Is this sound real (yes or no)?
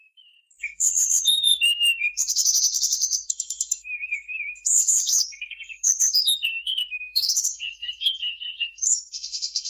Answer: no